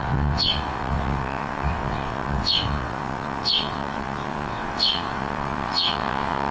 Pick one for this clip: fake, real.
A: fake